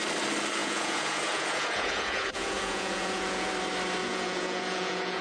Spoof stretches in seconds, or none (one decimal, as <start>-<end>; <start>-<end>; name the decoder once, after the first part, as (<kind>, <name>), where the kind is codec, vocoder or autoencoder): 0.6-3.5 (vocoder, Vocos); 4.0-5.2